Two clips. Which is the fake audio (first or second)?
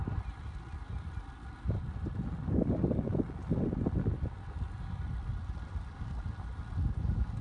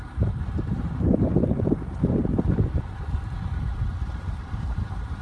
second